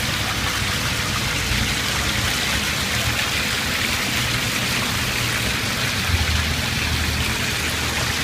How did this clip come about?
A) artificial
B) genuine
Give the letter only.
B